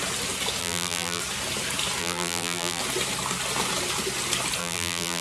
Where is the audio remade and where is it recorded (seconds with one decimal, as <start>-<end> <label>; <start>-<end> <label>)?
0.0-0.6 recorded; 0.6-1.2 remade; 1.2-2.0 recorded; 2.0-2.8 remade; 2.8-4.6 recorded; 4.6-5.2 remade